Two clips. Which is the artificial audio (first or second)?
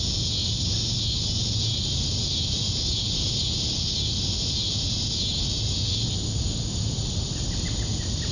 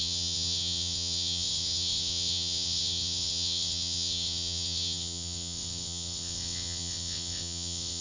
second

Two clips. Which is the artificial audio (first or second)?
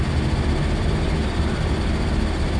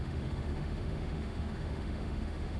second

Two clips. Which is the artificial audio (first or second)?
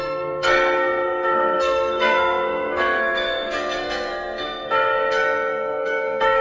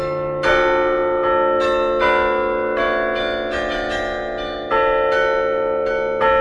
first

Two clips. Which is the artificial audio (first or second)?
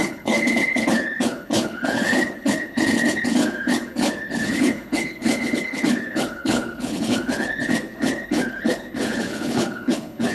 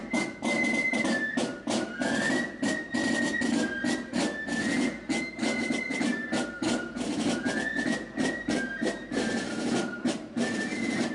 first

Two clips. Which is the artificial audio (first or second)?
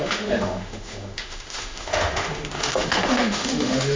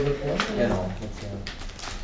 first